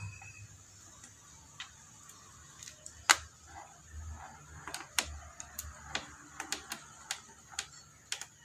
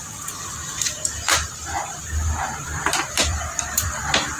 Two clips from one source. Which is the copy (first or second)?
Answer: second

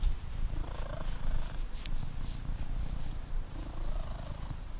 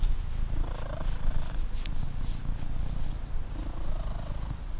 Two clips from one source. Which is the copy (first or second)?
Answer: first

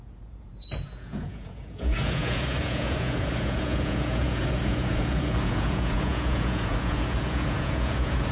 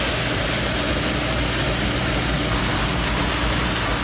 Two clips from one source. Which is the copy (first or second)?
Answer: first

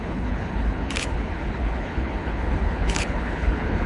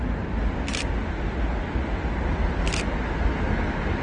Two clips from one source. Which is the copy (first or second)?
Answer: first